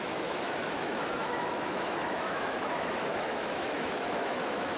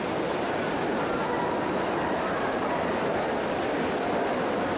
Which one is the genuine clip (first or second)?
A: second